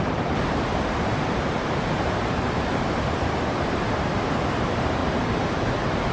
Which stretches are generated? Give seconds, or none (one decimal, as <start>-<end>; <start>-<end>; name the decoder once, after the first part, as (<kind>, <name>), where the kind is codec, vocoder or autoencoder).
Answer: 0.0-4.1 (vocoder, BigVGAN v2); 4.6-6.1